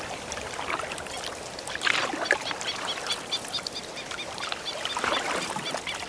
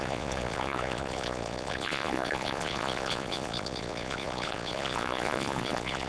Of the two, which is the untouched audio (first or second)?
first